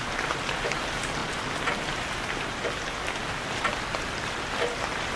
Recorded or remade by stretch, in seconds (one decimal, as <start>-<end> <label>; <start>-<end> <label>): 0.0-5.2 recorded